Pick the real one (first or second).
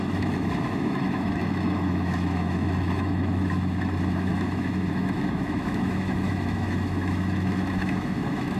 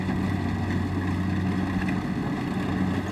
second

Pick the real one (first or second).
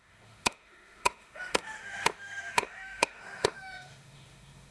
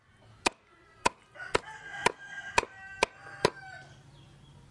second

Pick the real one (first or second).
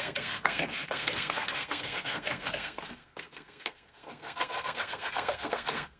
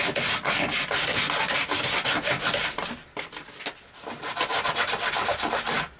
second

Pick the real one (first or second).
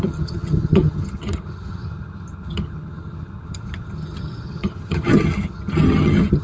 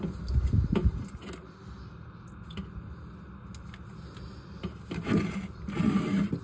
second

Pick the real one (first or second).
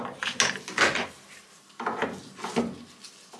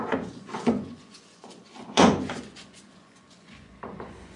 first